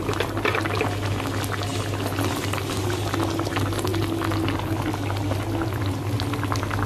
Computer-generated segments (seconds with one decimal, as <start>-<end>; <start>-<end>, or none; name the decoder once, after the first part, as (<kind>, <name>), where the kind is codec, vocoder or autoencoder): none

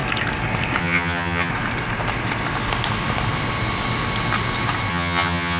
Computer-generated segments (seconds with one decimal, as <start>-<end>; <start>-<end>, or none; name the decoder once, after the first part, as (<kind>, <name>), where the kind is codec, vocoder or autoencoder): 0.8-1.5 (vocoder, HiFi-GAN); 4.9-5.6